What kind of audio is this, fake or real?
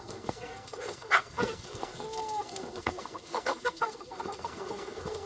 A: fake